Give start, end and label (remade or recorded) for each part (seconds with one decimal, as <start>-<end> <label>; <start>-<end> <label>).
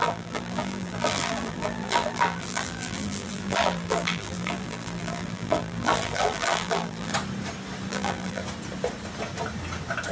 0.0-7.1 remade; 7.1-7.9 recorded; 7.9-8.4 remade; 8.4-10.1 recorded